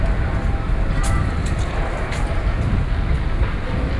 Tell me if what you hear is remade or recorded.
recorded